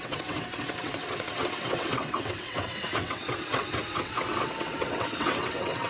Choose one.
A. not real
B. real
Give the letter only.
A